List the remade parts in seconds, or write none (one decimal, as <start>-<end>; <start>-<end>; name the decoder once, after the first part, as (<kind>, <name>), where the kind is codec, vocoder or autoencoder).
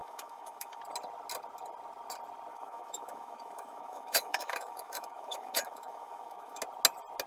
0.0-0.8 (autoencoder, DAC-VAE); 2.5-6.6